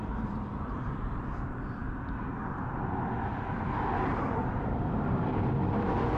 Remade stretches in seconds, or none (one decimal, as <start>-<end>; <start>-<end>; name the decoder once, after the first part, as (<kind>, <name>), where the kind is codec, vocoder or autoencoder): 0.0-1.8 (vocoder, BigVGAN v2); 4.0-6.2